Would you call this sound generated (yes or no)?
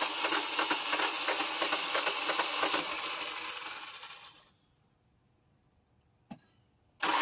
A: no